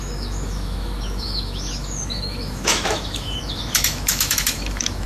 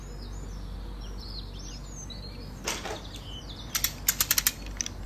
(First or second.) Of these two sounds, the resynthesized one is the first